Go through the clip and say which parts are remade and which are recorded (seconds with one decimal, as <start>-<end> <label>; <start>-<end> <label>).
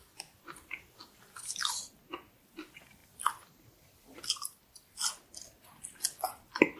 0.0-3.0 recorded; 3.0-4.6 remade; 4.6-6.8 recorded